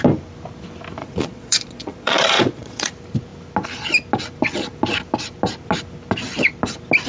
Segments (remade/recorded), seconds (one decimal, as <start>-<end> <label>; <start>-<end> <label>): 0.0-1.0 recorded; 1.0-2.9 remade; 2.9-7.1 recorded